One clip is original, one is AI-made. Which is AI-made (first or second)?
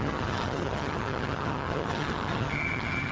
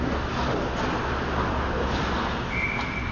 first